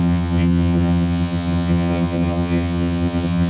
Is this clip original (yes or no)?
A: no